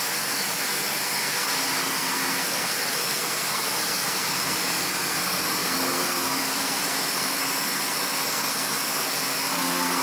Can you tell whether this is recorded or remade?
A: remade